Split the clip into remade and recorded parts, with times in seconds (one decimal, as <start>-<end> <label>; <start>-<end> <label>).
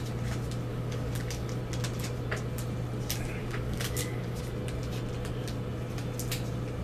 0.0-0.7 recorded; 0.7-1.6 remade; 1.6-3.4 recorded; 3.4-4.4 remade; 4.4-6.8 recorded